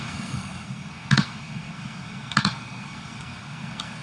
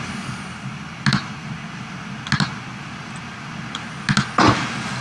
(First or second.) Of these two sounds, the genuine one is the second